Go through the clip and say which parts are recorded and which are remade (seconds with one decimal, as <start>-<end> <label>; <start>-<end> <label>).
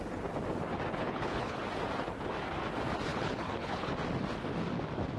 0.0-1.0 recorded; 1.0-1.6 remade; 1.6-3.1 recorded; 3.1-3.9 remade; 3.9-5.2 recorded